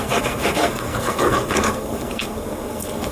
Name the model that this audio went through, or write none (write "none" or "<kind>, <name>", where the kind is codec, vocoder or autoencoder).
codec, SNAC